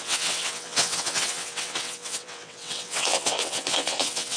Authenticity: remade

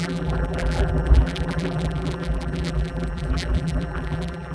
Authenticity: remade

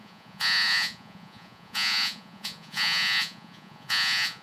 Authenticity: remade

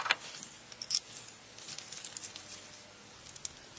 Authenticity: recorded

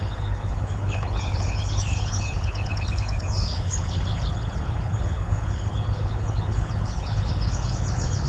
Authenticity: remade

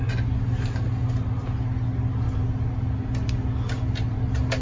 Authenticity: recorded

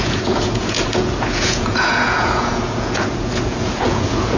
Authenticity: remade